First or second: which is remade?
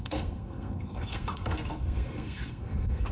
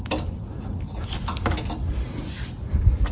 first